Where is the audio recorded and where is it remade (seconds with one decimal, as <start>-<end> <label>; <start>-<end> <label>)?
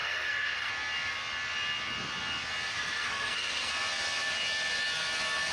0.0-0.7 remade; 0.7-2.7 recorded; 2.7-3.7 remade; 3.7-5.5 recorded